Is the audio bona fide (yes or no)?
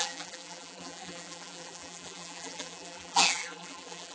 no